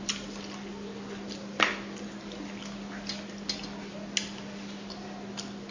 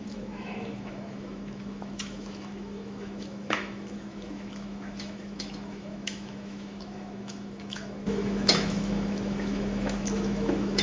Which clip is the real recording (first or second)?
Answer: first